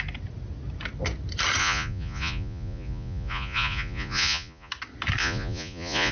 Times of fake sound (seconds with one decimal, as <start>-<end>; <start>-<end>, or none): 1.6-4.7; 5.2-6.1